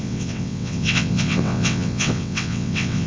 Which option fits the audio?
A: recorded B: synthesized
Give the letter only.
B